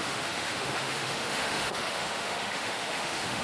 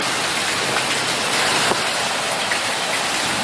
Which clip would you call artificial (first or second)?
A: first